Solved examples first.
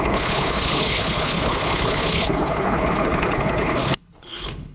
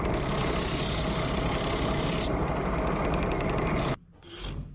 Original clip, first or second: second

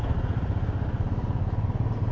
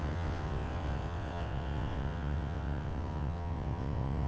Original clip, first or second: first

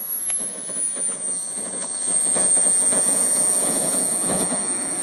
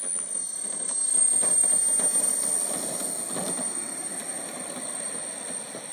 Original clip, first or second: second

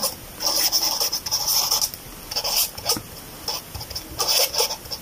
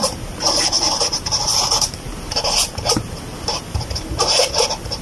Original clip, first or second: first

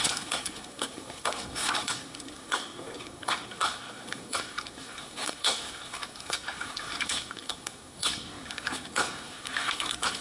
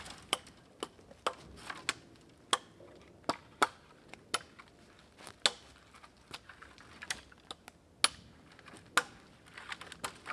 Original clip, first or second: second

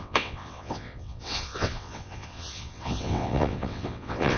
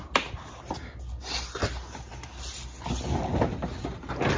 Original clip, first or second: second